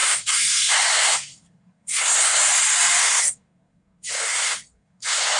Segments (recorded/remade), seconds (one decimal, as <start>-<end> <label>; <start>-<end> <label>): 0.0-2.4 remade; 2.4-3.0 recorded; 3.0-5.4 remade